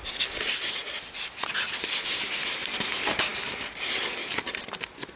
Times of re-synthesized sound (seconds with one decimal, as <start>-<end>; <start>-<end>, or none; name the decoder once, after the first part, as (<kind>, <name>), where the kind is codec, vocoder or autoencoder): none